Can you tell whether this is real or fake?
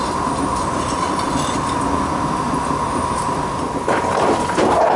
real